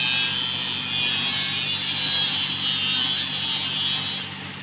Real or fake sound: real